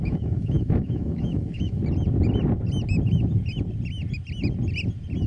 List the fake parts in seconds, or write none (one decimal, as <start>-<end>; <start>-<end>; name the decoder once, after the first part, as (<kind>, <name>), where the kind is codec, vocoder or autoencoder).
0.0-1.8 (autoencoder, DAC-VAE)